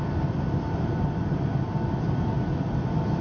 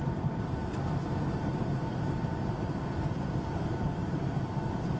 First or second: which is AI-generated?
second